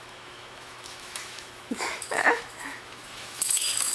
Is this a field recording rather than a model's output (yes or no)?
no